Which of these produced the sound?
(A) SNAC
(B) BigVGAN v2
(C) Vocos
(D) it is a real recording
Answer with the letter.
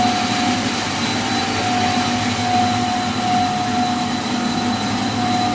D